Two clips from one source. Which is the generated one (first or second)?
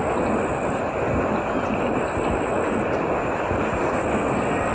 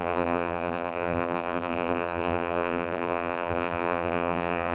second